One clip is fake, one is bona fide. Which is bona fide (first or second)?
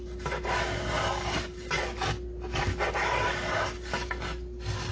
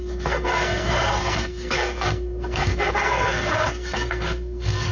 first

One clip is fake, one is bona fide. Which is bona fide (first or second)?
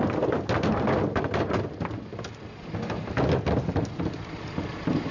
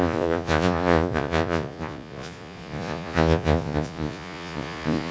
first